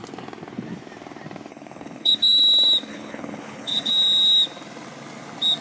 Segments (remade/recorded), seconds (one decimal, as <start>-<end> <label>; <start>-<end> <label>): 0.0-1.5 recorded; 1.5-2.1 remade; 2.1-2.9 recorded; 2.9-3.9 remade; 3.9-5.6 recorded